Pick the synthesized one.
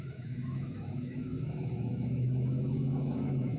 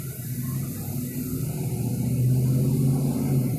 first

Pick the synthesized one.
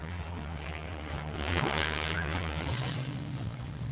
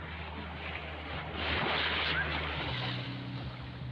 first